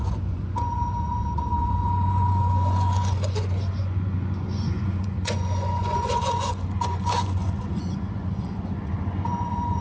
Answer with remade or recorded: remade